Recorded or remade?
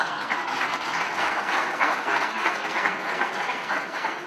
remade